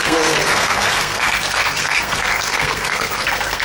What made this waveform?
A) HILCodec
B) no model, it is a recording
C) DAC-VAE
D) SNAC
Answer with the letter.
D